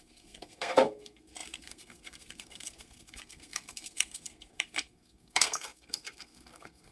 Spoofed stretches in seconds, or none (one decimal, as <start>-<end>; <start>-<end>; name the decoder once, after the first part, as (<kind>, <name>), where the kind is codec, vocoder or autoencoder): 0.0-6.9 (codec, SNAC)

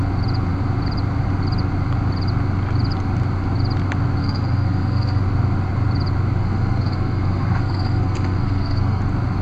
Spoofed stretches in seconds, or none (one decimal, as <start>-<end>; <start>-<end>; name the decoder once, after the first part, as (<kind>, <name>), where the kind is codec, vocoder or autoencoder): 4.2-5.2 (codec, SNAC); 6.4-9.0